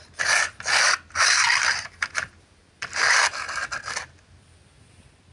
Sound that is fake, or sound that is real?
real